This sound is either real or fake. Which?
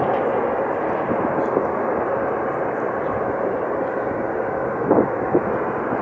real